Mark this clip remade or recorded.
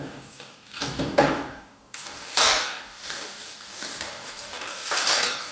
remade